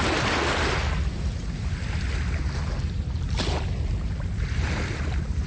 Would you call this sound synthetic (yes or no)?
no